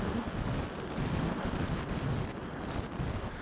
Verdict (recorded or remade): recorded